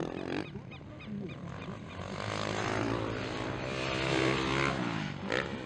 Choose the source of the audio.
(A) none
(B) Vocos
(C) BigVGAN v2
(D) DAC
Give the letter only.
A